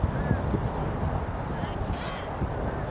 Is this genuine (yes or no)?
yes